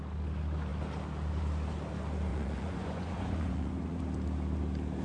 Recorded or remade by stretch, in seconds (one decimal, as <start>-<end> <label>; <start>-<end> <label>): 0.0-2.3 recorded; 2.3-4.0 remade; 4.0-5.0 recorded